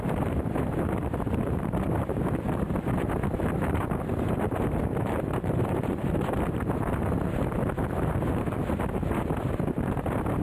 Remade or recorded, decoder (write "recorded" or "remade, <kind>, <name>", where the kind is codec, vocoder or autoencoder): remade, vocoder, BigVGAN v2